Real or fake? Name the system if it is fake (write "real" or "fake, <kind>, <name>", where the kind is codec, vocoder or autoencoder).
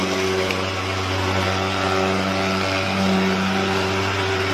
real